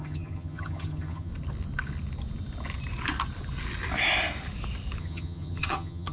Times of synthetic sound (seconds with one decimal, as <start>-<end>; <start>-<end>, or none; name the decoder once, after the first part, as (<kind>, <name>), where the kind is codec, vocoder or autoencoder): 0.0-1.3 (vocoder, HiFi-GAN); 5.0-6.1